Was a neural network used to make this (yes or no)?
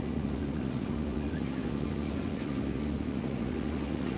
yes